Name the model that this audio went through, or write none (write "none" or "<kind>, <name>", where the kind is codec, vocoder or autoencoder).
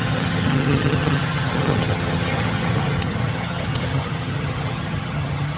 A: vocoder, HiFi-GAN